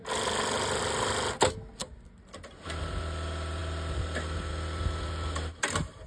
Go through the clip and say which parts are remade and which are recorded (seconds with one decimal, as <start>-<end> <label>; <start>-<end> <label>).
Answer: 0.0-6.1 recorded